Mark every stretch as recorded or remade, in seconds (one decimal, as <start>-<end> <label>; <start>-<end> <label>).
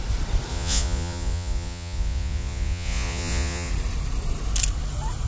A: 0.0-0.5 recorded; 0.5-3.7 remade; 3.7-5.3 recorded